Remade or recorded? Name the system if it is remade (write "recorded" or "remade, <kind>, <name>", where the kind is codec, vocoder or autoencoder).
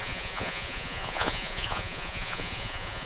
remade, vocoder, Vocos